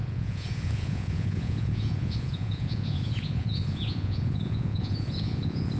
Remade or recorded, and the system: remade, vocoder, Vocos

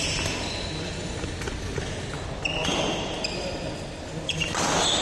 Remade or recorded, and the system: recorded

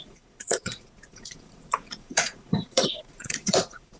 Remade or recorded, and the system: remade, vocoder, Vocos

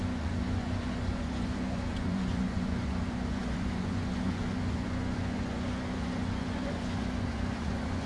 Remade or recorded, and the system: remade, vocoder, Vocos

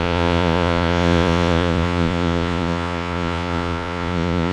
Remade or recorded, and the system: remade, vocoder, Vocos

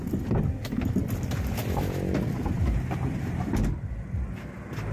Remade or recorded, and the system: recorded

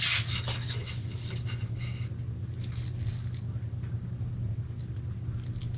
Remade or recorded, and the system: recorded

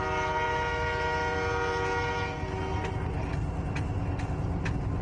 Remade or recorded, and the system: recorded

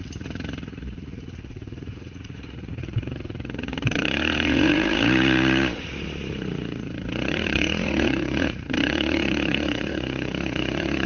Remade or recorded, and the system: remade, vocoder, Vocos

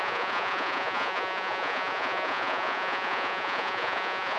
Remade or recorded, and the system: remade, vocoder, Vocos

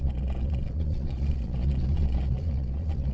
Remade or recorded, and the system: remade, vocoder, Vocos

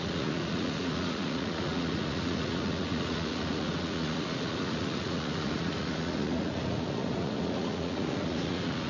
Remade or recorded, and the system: remade, vocoder, Vocos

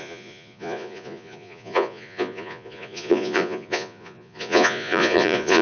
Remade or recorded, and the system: remade, vocoder, Vocos